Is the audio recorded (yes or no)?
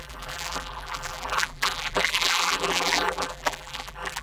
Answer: no